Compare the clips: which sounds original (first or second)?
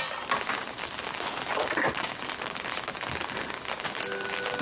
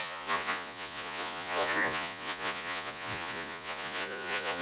first